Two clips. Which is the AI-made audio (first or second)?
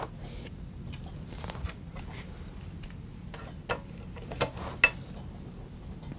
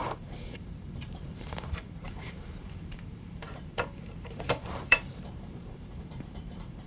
second